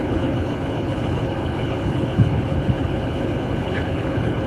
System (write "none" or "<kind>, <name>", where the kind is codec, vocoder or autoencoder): codec, HILCodec